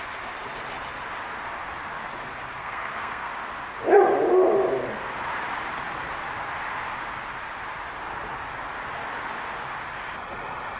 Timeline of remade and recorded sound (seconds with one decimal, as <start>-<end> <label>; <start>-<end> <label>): 0.0-2.6 recorded; 2.6-3.3 remade; 3.3-10.8 recorded